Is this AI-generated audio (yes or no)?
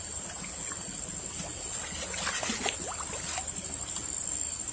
no